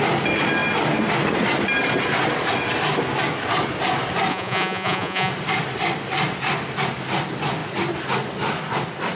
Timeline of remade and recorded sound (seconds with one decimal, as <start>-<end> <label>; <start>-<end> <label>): 0.0-4.3 recorded; 4.3-5.3 remade; 5.3-9.2 recorded